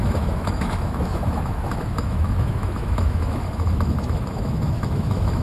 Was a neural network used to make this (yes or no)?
yes